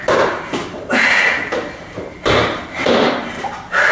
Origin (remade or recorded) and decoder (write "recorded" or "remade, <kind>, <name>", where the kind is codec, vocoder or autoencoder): recorded